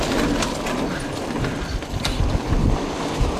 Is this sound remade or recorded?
recorded